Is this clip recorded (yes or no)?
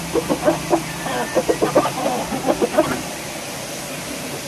no